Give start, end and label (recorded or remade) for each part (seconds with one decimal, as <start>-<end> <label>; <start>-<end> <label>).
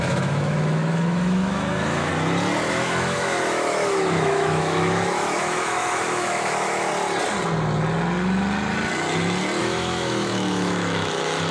0.0-2.1 remade; 2.1-2.7 recorded; 2.7-6.9 remade; 6.9-9.6 recorded; 9.6-11.5 remade